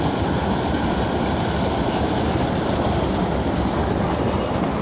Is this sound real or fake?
real